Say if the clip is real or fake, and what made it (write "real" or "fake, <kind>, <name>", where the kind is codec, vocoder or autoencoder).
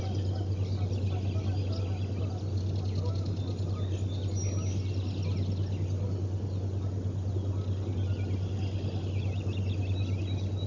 real